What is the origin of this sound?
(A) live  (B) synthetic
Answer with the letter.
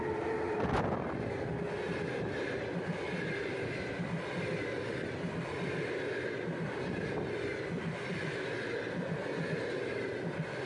A